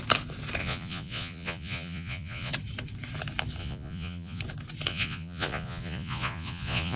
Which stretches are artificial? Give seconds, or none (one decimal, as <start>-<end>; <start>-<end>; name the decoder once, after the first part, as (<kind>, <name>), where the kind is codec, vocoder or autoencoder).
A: 0.6-2.5 (vocoder, Vocos); 3.6-4.4; 4.9-7.0